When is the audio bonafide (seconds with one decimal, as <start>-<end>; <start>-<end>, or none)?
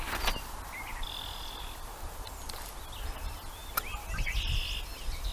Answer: 0.0-0.9; 2.6-5.3